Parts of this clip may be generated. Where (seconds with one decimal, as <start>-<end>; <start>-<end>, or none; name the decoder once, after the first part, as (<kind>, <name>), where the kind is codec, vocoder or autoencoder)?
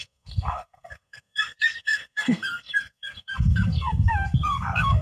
0.0-5.0 (codec, SNAC)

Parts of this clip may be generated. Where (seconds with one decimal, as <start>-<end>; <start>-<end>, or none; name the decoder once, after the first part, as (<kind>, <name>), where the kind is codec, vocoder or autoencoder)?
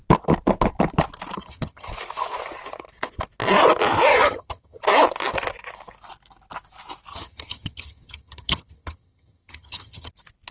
1.4-1.9 (vocoder, HiFi-GAN); 4.1-4.8; 7.1-10.1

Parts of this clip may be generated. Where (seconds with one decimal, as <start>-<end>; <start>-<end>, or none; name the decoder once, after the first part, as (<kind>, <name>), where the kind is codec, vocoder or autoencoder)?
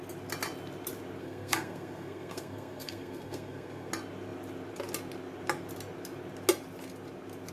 1.2-3.9 (codec, SNAC)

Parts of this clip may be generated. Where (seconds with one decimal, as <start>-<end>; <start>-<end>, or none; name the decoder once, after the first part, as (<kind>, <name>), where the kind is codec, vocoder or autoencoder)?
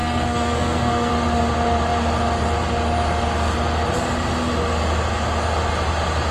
0.0-1.1 (codec, SNAC)